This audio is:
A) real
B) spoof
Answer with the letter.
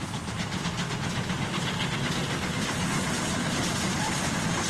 A